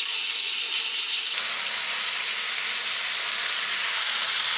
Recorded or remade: recorded